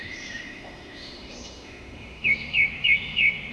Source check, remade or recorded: remade